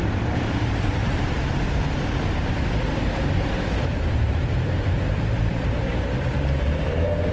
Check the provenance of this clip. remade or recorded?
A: remade